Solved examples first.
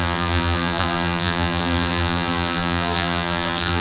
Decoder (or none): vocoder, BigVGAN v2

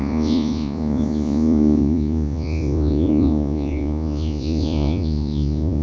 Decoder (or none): vocoder, Vocos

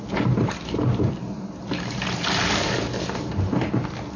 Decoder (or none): none